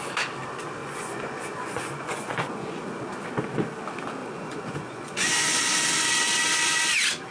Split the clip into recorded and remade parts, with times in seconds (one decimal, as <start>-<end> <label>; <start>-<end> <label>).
0.0-0.8 recorded; 0.8-2.8 remade; 2.8-4.2 recorded; 4.2-5.6 remade; 5.6-7.3 recorded